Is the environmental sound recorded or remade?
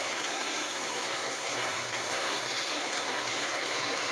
remade